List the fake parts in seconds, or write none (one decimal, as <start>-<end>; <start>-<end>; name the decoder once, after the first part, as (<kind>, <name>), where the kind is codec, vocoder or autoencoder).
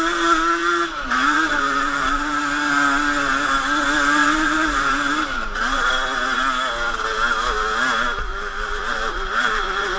0.6-2.4 (vocoder, BigVGAN v2); 4.2-5.9; 8.3-10.0